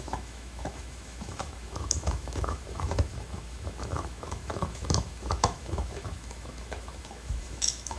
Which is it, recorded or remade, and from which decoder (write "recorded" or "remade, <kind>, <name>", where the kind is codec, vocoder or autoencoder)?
remade, autoencoder, DAC-VAE